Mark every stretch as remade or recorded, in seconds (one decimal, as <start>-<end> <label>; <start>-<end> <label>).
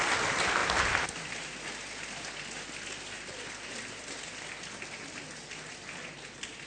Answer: 0.0-6.7 recorded